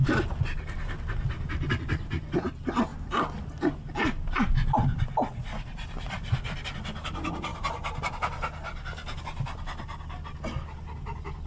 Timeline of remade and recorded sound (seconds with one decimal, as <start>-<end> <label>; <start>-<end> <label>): 0.0-11.5 recorded